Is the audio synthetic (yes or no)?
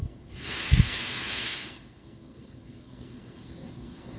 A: yes